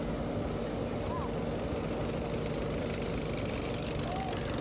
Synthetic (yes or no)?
no